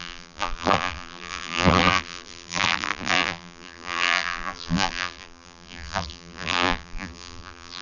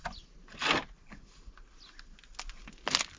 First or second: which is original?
second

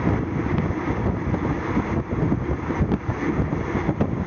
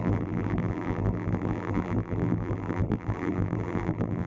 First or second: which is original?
first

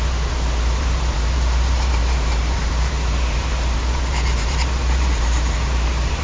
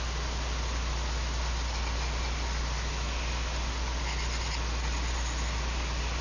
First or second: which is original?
second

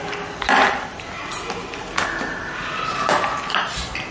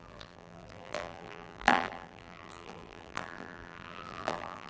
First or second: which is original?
first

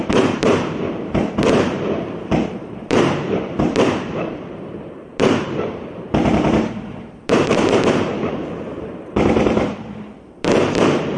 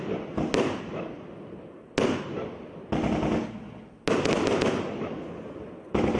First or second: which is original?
second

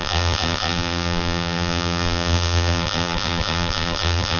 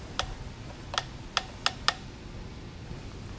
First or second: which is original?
second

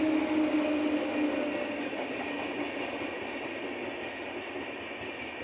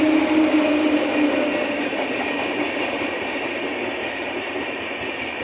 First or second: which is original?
first